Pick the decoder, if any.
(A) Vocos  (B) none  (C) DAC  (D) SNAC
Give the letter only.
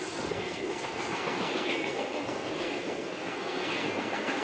D